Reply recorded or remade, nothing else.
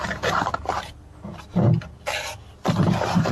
recorded